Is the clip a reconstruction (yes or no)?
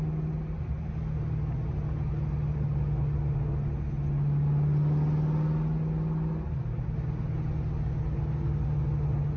no